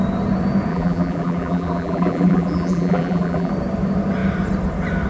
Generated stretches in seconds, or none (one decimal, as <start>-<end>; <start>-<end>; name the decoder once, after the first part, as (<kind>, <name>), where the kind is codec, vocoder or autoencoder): 0.7-3.5 (vocoder, BigVGAN v2)